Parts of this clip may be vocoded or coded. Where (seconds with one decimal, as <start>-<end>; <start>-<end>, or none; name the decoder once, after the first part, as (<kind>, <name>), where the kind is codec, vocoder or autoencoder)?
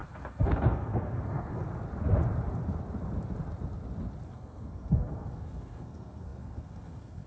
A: 0.0-1.6 (codec, SNAC); 4.3-7.3